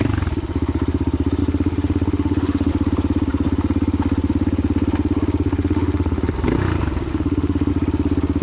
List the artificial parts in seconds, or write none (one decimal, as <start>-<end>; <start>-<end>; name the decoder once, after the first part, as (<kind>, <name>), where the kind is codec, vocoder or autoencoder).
1.4-2.7 (autoencoder, DAC-VAE); 5.5-6.2; 7.1-7.7